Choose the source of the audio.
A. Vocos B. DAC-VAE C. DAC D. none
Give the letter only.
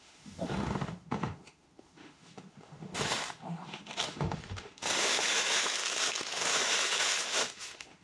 B